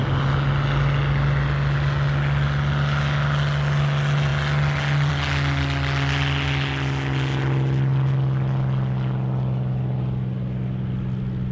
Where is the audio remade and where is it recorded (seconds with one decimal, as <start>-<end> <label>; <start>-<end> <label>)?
0.0-11.5 recorded